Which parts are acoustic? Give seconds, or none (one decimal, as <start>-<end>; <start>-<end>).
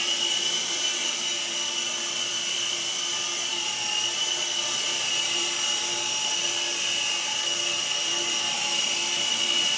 none